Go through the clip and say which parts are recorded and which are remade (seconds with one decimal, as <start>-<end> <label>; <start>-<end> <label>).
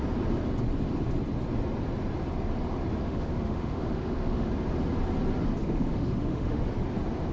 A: 0.0-3.0 recorded; 3.0-4.5 remade; 4.5-5.6 recorded; 5.6-6.6 remade; 6.6-7.3 recorded